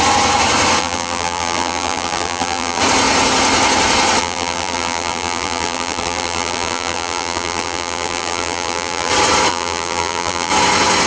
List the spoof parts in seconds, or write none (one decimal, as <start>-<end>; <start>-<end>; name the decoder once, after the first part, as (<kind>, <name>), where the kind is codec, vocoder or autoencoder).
0.8-2.8 (vocoder, BigVGAN v2); 4.2-9.1; 9.5-10.5